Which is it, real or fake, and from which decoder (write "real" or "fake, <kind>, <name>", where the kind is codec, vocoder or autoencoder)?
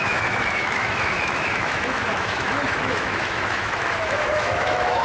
fake, autoencoder, DAC-VAE